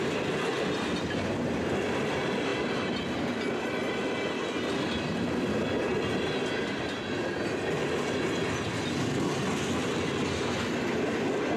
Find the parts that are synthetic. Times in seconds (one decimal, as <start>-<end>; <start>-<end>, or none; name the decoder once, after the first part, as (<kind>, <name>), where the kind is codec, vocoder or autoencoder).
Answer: none